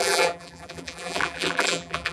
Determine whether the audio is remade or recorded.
remade